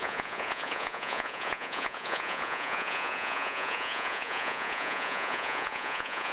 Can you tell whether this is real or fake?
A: fake